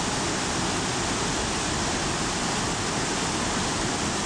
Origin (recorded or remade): recorded